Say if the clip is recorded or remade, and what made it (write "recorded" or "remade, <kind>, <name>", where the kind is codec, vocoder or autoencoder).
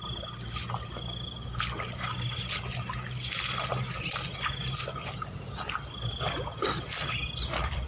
recorded